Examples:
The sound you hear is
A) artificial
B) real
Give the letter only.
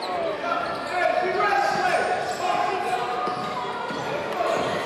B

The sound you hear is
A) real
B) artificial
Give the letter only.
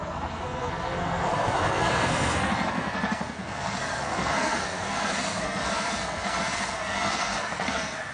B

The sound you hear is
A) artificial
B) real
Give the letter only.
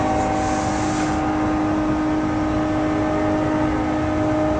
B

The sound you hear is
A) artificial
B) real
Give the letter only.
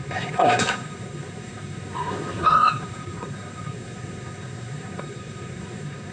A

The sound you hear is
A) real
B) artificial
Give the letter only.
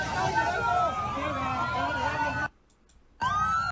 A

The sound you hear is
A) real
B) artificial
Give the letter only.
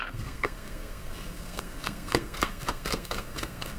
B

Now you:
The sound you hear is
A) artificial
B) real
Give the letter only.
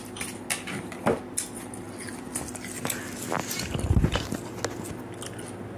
B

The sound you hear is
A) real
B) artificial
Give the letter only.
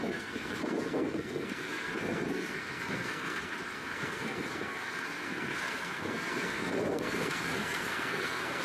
B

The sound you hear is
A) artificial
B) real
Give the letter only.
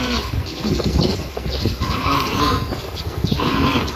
A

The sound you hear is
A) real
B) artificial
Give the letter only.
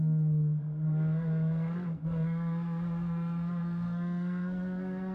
B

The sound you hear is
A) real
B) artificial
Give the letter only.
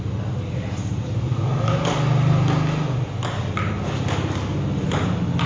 A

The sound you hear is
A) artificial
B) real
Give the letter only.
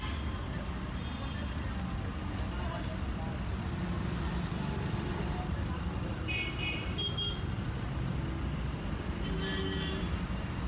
B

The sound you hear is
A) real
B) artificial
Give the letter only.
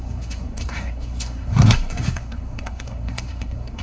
B